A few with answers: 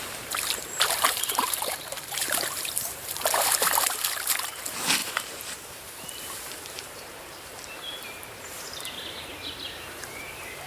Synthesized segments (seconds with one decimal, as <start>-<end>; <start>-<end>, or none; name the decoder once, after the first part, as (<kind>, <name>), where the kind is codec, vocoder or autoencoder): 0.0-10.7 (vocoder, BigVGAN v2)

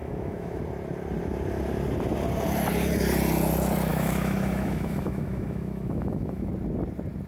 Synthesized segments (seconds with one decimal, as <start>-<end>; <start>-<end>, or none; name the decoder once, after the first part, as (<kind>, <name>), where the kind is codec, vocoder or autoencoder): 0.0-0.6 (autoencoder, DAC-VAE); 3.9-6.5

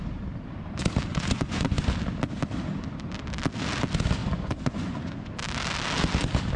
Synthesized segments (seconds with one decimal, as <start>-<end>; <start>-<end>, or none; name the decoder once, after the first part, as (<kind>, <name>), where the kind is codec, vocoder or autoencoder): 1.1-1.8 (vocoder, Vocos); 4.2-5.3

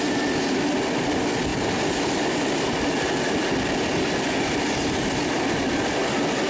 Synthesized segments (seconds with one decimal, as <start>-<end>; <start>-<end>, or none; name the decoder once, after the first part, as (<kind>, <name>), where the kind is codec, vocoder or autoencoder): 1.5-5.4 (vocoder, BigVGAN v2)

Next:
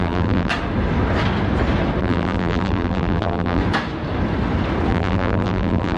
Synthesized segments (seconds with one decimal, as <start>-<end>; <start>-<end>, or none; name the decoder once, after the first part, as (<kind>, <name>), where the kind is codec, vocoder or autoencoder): 0.0-0.5 (vocoder, BigVGAN v2); 2.0-3.6; 4.9-6.0

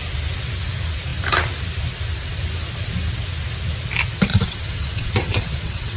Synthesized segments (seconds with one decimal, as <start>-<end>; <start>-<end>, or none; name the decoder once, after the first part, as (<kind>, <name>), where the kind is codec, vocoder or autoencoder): 4.3-6.0 (vocoder, WaveNeXt)